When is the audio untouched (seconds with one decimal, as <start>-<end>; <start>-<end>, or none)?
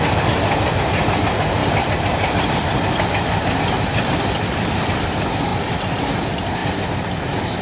0.0-7.6